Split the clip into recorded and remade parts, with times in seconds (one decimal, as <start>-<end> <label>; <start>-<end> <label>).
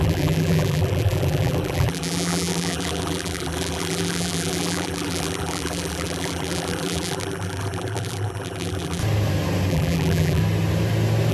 0.0-9.0 remade; 9.0-9.7 recorded; 9.7-10.4 remade; 10.4-11.3 recorded